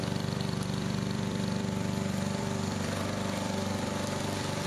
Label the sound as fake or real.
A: fake